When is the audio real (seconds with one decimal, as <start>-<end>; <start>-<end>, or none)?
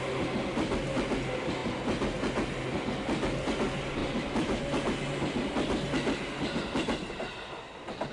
0.0-8.1